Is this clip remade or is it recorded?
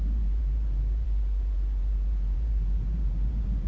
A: remade